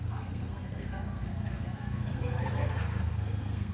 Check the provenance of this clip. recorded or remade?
remade